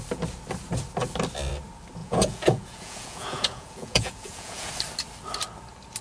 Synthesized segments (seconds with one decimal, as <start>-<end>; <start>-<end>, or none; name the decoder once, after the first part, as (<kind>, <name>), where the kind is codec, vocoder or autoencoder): 2.0-4.7 (vocoder, Vocos)